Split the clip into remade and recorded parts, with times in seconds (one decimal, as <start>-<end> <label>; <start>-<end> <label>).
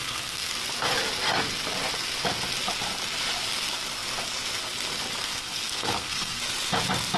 0.0-0.5 remade; 0.5-5.2 recorded; 5.2-6.4 remade; 6.4-7.2 recorded